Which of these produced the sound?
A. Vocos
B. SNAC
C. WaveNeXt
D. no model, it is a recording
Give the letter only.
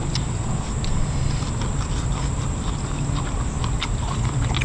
D